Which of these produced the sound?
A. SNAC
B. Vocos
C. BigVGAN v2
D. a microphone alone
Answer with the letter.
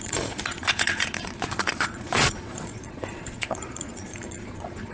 B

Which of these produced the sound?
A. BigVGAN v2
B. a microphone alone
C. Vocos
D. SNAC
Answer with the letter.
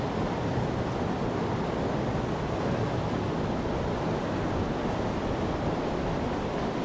B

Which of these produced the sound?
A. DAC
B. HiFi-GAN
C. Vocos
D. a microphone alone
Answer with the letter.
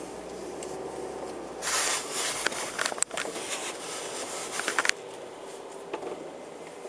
D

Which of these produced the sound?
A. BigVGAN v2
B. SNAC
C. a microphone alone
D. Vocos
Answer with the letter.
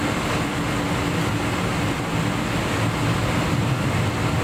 C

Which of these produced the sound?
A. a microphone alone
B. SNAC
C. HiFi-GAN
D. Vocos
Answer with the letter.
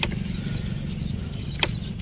A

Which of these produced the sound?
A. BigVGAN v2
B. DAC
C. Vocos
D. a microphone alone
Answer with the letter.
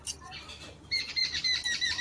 D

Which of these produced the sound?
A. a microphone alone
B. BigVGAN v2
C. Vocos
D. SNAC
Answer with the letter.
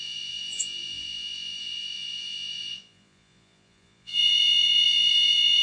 C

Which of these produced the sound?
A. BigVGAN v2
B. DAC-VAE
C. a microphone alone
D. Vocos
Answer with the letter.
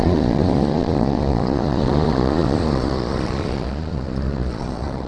D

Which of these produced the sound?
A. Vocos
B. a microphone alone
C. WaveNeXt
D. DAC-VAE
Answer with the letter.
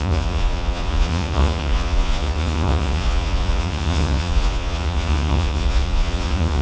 A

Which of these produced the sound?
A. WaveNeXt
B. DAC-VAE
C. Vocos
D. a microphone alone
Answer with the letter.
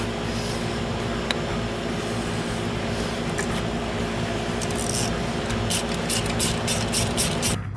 D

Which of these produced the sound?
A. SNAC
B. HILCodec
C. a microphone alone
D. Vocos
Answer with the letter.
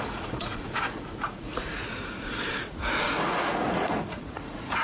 D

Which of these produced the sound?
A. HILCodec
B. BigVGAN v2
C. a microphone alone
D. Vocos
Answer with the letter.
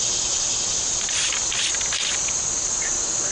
C